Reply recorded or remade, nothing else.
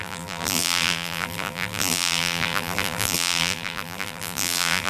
remade